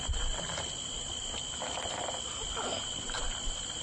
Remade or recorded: recorded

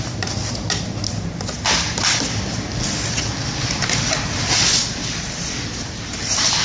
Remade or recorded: recorded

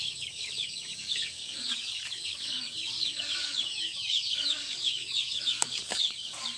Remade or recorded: remade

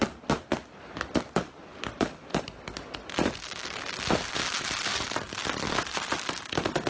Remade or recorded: recorded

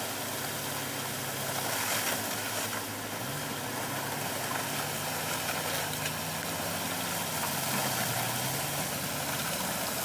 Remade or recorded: recorded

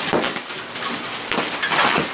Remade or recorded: recorded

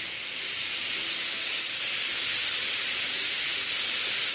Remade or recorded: recorded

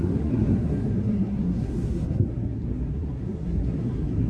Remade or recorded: remade